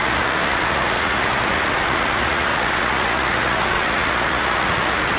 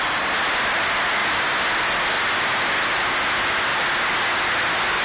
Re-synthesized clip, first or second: first